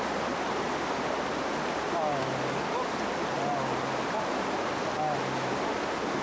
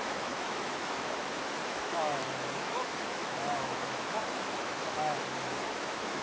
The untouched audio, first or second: first